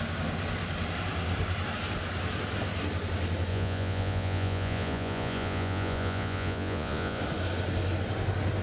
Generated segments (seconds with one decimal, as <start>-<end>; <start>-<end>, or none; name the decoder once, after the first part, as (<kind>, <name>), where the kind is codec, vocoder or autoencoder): 3.5-7.2 (vocoder, Vocos)